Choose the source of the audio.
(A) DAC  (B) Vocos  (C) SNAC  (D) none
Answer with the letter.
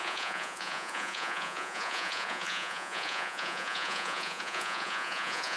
B